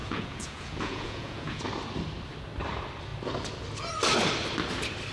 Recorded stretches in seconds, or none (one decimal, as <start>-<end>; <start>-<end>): 1.6-5.1